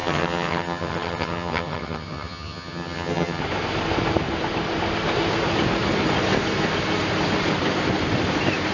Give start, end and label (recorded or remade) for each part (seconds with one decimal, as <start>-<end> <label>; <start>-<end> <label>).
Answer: 0.0-3.4 remade; 3.4-8.7 recorded